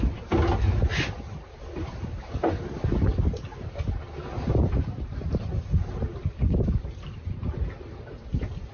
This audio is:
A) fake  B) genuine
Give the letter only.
B